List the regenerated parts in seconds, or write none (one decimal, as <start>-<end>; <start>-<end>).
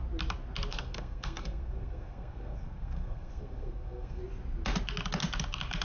0.7-4.2